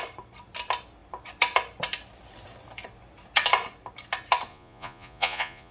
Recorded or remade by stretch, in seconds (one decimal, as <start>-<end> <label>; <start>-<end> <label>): 0.0-4.5 recorded; 4.5-5.7 remade